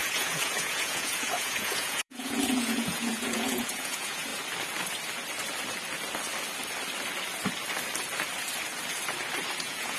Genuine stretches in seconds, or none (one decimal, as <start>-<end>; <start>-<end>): 4.3-9.6